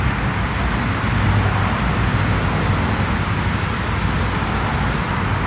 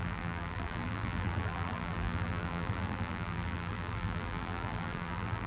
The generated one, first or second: second